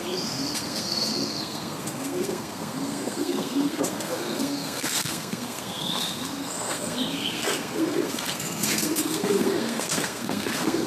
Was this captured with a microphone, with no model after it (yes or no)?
no